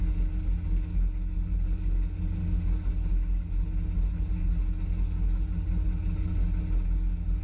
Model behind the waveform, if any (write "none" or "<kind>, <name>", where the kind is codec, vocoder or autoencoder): none